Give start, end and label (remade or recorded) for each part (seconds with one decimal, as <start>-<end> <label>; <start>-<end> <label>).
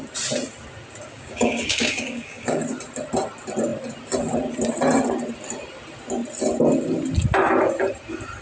0.0-1.1 recorded; 1.1-2.6 remade; 2.6-8.4 recorded